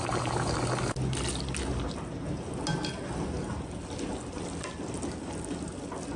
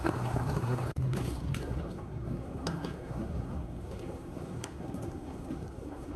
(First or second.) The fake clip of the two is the second